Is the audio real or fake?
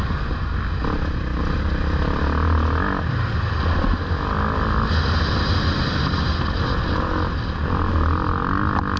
real